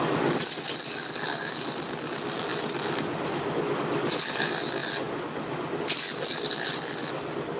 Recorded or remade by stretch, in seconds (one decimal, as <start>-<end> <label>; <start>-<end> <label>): 0.0-7.6 recorded